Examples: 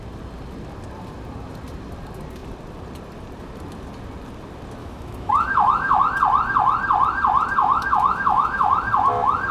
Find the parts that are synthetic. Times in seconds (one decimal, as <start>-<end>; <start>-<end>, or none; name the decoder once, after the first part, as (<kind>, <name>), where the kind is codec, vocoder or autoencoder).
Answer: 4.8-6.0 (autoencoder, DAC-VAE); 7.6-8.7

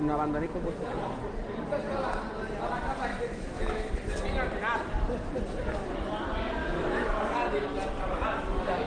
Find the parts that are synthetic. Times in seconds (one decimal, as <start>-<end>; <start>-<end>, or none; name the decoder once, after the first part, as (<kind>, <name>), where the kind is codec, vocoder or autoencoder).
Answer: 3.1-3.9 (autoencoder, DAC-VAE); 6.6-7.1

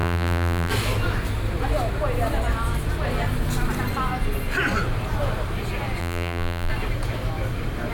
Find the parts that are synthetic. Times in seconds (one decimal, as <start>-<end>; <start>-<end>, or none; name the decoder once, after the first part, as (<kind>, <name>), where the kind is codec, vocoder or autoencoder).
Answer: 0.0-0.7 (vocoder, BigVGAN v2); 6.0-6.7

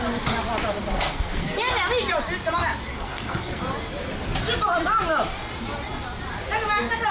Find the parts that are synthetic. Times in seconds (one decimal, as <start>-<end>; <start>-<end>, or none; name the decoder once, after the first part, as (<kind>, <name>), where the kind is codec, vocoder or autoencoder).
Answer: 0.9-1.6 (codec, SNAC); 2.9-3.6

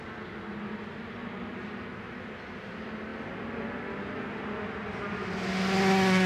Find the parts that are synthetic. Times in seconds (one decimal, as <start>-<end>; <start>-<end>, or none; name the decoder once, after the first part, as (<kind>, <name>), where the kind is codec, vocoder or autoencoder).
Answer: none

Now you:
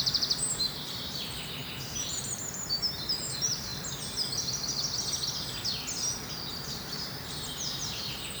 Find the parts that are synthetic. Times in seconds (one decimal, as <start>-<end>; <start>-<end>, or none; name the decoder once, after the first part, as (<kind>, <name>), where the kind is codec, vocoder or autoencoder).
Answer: 0.0-3.7 (vocoder, BigVGAN v2); 6.5-8.4

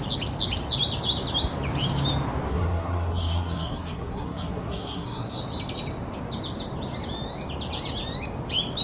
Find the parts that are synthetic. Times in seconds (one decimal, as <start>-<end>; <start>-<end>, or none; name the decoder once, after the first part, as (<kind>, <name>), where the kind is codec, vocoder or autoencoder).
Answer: 2.5-5.4 (codec, SNAC)

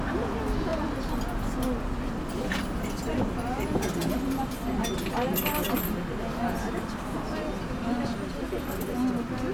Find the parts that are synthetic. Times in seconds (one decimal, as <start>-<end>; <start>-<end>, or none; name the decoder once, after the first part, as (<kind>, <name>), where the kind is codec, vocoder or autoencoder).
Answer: 0.0-0.7 (vocoder, BigVGAN v2); 2.1-4.0